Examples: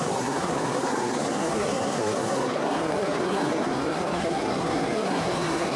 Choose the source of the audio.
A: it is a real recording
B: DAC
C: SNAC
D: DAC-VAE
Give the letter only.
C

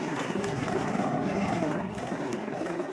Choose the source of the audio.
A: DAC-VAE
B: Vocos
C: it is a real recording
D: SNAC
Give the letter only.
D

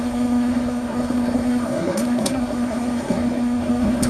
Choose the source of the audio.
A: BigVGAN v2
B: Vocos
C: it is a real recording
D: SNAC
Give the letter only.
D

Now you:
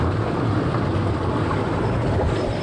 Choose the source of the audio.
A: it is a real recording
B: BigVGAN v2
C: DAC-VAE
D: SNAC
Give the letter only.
A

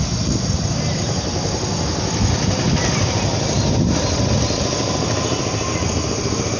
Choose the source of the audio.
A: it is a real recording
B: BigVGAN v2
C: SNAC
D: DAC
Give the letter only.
A